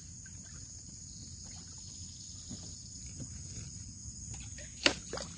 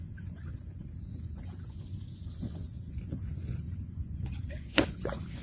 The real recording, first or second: first